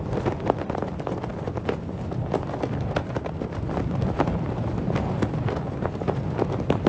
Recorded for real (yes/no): yes